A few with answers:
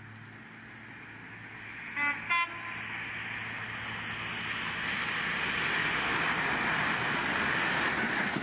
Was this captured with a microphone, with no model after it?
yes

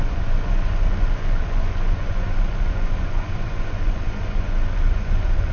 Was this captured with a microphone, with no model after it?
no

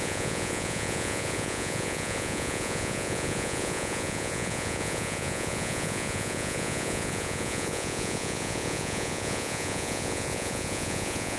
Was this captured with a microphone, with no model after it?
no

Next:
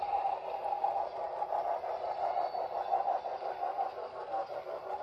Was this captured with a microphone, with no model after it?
yes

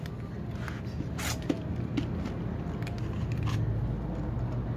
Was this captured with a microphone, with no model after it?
yes